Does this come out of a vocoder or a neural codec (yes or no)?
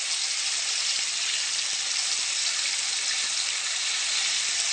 no